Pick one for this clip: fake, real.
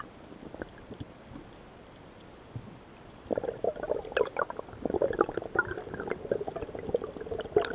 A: real